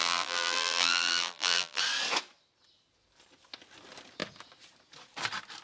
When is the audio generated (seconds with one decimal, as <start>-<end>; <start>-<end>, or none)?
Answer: 0.0-1.8